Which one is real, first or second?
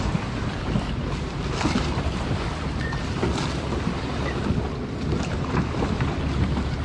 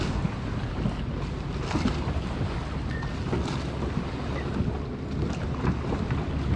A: second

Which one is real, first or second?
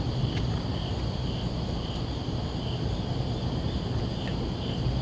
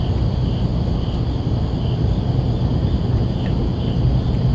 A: second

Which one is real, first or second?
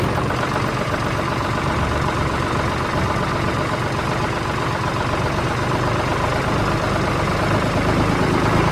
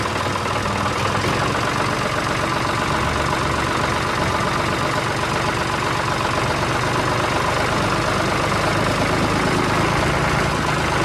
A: second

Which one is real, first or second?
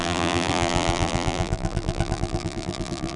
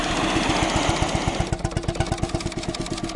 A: second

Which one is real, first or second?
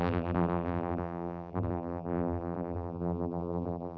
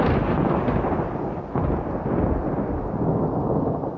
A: second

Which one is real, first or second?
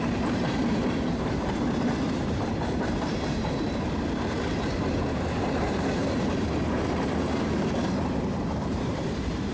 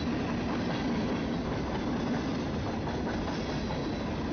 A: second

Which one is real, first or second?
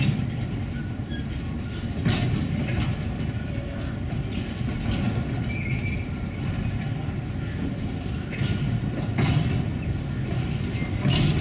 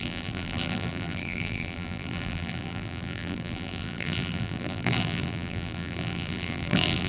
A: first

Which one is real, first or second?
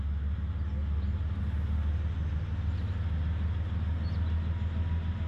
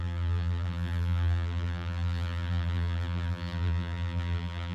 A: first